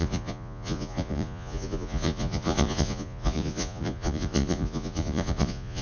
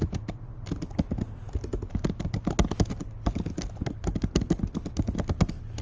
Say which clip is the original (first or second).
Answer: second